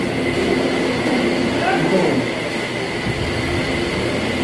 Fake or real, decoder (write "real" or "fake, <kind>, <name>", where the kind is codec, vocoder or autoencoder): real